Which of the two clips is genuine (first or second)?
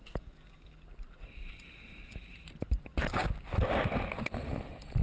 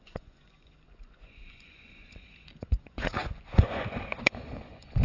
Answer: first